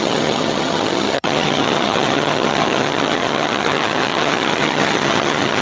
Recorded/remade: remade